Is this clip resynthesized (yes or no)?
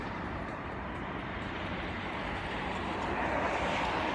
yes